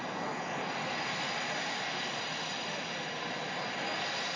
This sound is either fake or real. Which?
real